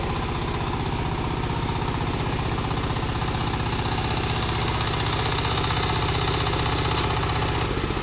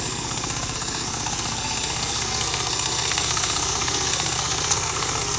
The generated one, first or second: second